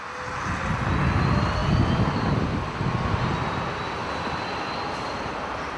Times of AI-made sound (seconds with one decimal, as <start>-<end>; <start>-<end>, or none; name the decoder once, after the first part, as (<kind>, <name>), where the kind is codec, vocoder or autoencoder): none